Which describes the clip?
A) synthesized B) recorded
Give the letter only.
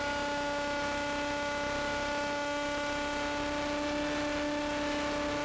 B